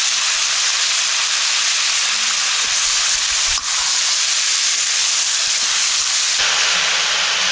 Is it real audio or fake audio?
real